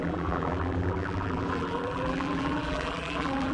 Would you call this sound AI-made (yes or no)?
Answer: yes